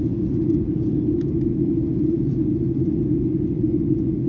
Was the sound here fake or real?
real